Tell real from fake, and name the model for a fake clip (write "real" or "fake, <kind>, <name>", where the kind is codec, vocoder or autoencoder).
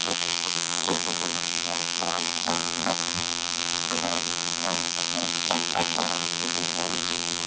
fake, vocoder, BigVGAN v2